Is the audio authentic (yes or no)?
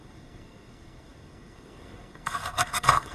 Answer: no